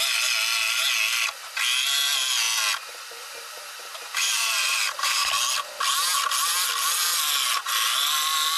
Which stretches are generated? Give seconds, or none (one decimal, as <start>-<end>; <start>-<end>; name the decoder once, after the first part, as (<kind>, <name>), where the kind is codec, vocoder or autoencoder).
3.2-5.3 (vocoder, BigVGAN v2)